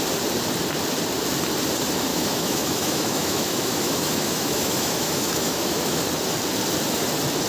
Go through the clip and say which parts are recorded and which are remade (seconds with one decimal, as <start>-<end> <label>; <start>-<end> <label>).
0.0-2.1 recorded; 2.1-6.0 remade; 6.0-7.5 recorded